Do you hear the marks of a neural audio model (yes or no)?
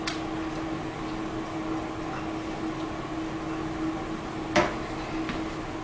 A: no